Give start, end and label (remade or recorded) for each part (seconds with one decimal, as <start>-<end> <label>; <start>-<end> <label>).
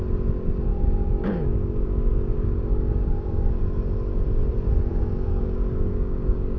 0.0-0.7 recorded; 0.7-3.6 remade; 3.6-4.9 recorded; 4.9-6.6 remade